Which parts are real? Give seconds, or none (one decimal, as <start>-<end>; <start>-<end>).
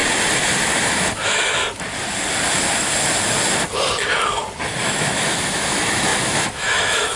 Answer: 0.0-0.6; 1.6-4.8